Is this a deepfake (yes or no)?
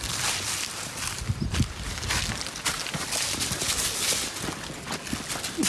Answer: no